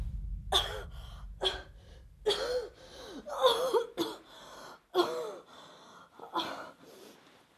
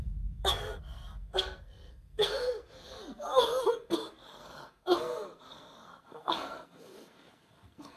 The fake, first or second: second